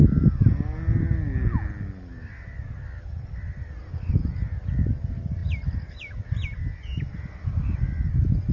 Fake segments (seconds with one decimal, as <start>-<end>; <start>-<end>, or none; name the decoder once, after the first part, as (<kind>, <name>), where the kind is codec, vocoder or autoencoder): none